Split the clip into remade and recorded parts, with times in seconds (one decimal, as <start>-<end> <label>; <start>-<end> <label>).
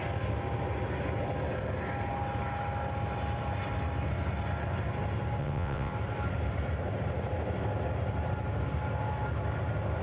0.0-5.4 recorded; 5.4-5.9 remade; 5.9-10.0 recorded